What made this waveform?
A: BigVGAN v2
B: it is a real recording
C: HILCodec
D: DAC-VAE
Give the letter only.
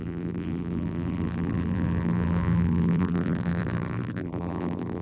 A